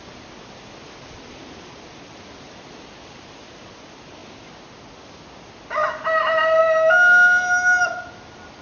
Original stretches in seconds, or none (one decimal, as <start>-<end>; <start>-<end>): 0.0-8.6

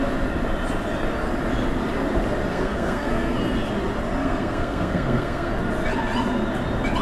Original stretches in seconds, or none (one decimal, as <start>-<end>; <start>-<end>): 0.0-2.5; 3.4-4.2; 5.5-7.0

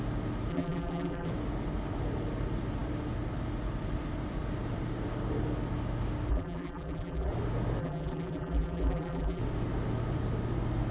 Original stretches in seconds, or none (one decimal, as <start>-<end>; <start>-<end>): 0.0-0.5; 1.3-6.3; 7.3-7.8; 9.4-10.9

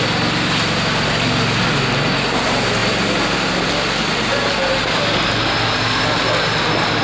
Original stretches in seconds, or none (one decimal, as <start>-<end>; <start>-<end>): 0.0-7.0

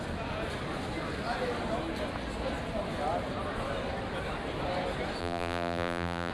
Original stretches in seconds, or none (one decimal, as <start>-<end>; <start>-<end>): 0.0-5.2

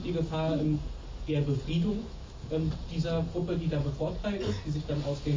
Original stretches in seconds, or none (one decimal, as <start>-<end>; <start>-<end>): 0.0-1.9; 2.5-5.4